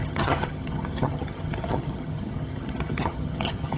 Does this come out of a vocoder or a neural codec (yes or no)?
yes